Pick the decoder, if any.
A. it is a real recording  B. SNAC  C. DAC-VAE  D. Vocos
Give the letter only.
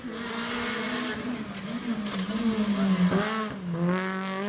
A